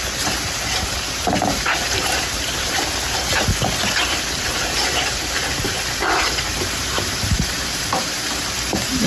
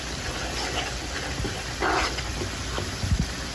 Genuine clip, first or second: second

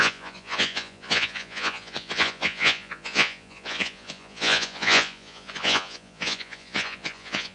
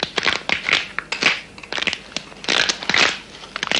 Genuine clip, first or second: second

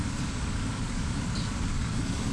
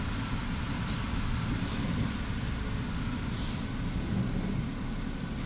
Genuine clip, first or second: second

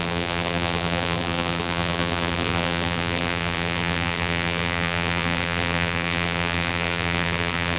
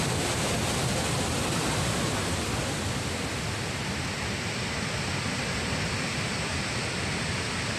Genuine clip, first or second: second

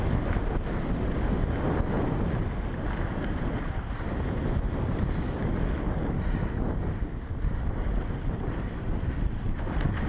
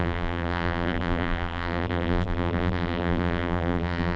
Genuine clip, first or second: first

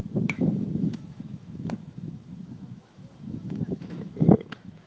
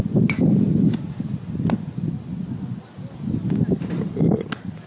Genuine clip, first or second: second